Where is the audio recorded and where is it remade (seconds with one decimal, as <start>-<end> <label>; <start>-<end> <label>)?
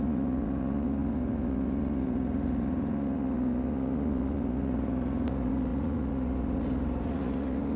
0.0-7.8 remade